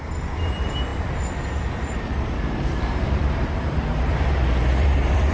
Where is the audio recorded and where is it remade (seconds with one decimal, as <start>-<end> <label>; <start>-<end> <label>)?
0.0-5.3 remade